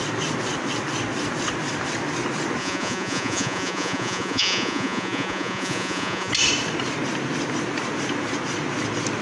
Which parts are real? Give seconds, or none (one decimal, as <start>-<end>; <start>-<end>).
0.0-2.6; 6.3-9.2

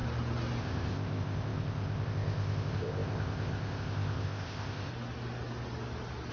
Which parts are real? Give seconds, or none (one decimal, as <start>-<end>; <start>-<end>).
0.0-0.6; 4.9-6.3

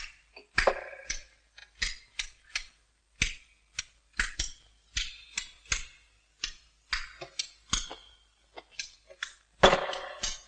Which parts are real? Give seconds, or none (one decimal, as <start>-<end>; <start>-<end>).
0.0-10.5

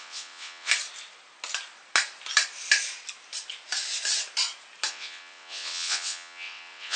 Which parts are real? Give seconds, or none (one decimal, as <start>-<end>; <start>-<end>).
0.7-4.9

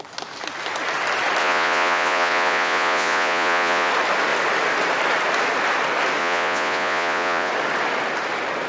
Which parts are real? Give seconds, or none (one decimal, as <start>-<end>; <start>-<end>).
0.0-1.4; 3.9-6.2; 7.5-8.7

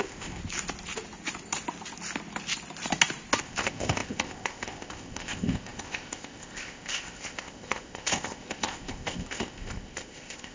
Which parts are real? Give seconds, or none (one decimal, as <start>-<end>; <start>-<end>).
0.4-3.4

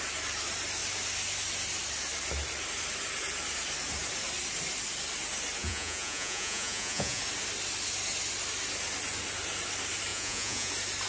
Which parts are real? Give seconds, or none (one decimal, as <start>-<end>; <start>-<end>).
0.0-5.6; 7.2-10.1; 10.7-11.1